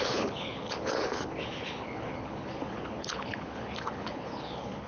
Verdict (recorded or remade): remade